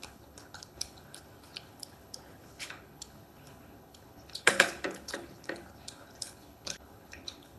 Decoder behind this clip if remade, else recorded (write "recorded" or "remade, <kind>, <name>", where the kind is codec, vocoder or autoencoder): remade, codec, HILCodec